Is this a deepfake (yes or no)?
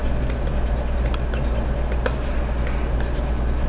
no